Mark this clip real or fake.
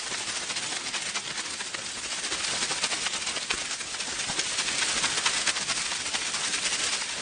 real